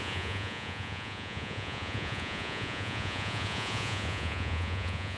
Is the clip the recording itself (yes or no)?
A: no